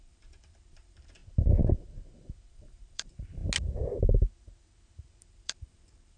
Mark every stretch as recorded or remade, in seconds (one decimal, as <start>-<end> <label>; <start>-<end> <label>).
0.0-1.2 remade; 1.2-2.5 recorded; 2.5-3.4 remade; 3.4-5.3 recorded; 5.3-6.2 remade